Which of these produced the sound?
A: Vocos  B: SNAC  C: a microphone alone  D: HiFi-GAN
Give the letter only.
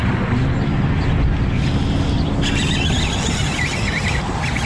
C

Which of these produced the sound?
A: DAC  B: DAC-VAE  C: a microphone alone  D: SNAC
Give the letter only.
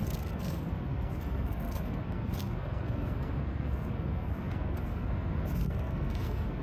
D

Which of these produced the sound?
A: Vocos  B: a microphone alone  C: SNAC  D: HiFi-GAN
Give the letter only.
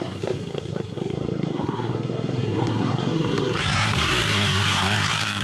C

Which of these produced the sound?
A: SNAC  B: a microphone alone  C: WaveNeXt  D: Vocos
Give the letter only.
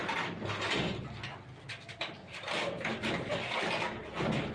B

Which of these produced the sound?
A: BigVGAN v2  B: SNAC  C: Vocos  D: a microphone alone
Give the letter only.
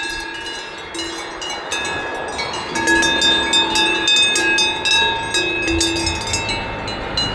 D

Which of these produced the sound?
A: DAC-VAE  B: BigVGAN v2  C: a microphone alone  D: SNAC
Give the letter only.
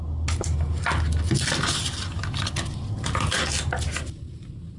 C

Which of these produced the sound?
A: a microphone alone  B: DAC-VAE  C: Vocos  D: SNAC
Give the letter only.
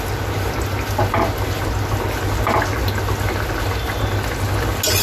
A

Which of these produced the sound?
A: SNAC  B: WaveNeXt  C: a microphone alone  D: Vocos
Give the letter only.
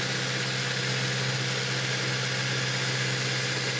C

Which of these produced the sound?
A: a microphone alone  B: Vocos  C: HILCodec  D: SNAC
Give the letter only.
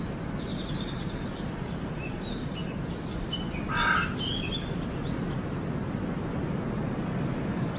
A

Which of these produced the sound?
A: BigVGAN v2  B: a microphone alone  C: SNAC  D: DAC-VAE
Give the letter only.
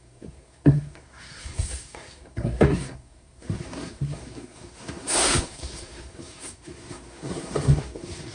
C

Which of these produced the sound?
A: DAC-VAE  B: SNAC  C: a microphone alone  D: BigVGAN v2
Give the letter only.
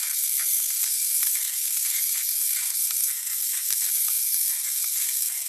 B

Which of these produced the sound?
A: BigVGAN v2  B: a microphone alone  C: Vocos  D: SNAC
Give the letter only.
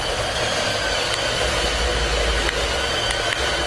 B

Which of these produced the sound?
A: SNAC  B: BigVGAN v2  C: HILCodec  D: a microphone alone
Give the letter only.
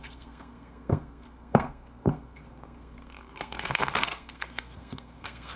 A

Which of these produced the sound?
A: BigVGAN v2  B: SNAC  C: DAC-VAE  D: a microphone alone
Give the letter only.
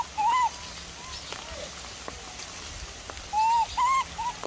D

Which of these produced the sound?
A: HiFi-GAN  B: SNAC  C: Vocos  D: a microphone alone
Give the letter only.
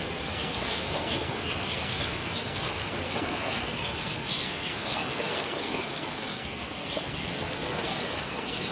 B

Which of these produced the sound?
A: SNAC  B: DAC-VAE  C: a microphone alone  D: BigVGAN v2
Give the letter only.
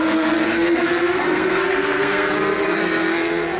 A